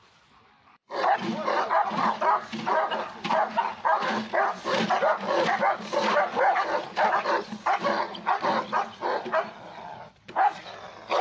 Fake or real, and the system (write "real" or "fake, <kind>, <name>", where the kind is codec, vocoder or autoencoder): real